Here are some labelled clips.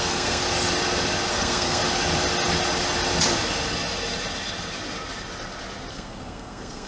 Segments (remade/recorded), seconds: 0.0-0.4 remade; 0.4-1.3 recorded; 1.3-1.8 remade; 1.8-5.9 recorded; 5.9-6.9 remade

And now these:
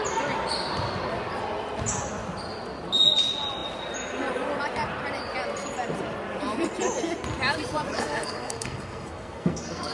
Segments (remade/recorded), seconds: 0.0-7.9 recorded; 7.9-9.9 remade

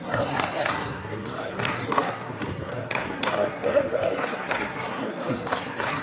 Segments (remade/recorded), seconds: 0.0-6.0 remade

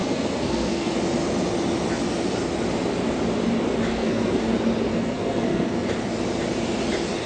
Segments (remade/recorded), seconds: 0.0-0.9 remade; 0.9-3.9 recorded; 3.9-4.5 remade; 4.5-4.9 recorded; 4.9-5.9 remade; 5.9-7.3 recorded